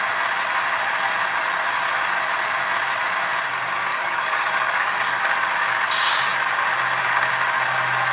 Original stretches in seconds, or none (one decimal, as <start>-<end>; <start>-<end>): 0.0-3.9; 5.2-8.1